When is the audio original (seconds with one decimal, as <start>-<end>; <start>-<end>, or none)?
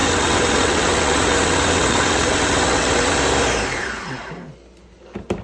3.2-5.4